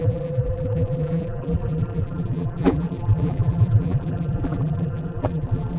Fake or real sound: fake